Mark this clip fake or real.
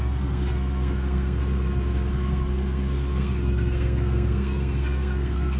fake